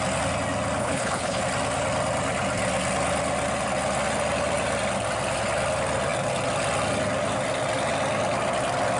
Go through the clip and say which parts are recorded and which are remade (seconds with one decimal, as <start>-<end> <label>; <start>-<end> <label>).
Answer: 0.0-0.8 recorded; 0.8-1.4 remade; 1.4-9.0 recorded